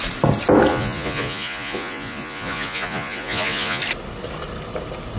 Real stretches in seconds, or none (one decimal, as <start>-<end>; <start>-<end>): 0.0-0.7; 3.8-5.2